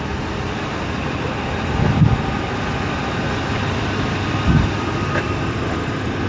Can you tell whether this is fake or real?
real